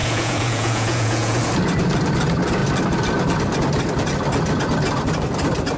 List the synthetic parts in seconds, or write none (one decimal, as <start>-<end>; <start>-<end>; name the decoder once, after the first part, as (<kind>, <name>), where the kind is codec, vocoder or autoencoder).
0.0-1.4 (vocoder, Vocos)